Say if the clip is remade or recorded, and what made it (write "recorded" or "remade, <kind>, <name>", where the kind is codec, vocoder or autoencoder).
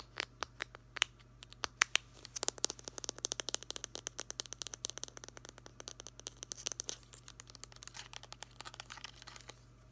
recorded